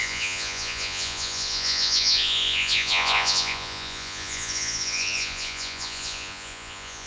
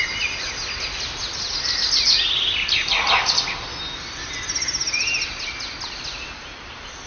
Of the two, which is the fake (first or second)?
first